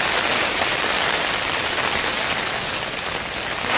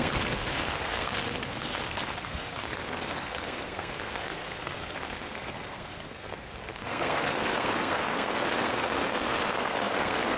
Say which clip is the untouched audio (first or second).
first